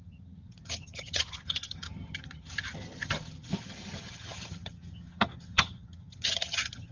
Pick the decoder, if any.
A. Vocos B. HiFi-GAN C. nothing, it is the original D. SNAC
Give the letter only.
B